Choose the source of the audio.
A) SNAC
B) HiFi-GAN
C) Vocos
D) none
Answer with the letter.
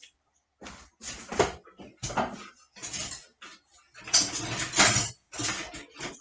D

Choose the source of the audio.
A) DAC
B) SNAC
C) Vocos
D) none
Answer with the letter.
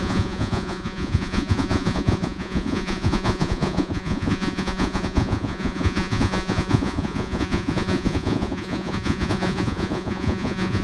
C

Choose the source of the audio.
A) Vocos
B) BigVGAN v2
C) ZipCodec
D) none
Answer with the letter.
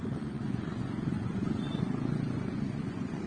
A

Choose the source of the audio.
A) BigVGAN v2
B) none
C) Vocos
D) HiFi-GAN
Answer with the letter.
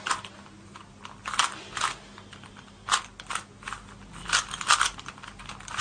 B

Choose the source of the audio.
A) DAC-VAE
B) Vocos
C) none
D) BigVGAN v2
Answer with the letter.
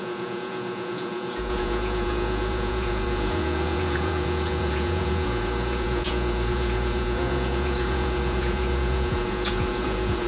B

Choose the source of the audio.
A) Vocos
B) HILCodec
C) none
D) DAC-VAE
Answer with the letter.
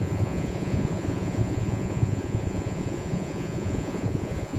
A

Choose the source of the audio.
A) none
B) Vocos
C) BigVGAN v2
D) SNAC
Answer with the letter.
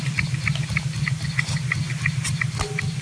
A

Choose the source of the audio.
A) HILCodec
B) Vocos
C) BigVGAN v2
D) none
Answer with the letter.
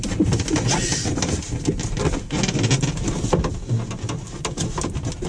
D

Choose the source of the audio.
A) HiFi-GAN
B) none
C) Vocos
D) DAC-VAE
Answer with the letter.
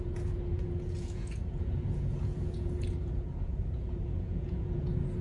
C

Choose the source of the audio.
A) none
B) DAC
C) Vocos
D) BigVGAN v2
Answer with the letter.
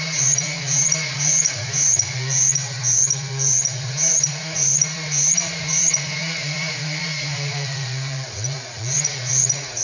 C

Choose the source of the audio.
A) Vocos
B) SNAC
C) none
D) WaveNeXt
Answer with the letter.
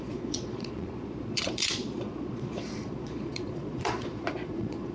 A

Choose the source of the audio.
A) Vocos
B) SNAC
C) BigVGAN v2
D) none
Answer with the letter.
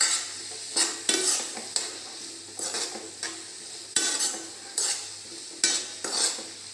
D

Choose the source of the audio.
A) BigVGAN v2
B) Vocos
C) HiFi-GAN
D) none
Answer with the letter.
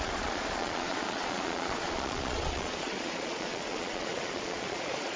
B